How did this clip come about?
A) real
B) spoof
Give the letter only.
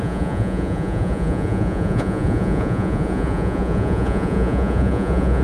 B